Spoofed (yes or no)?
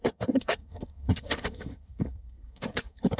yes